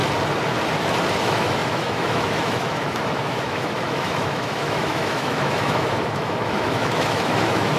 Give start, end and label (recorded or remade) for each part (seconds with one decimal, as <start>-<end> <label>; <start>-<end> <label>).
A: 0.0-1.2 recorded; 1.2-7.8 remade